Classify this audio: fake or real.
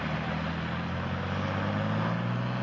real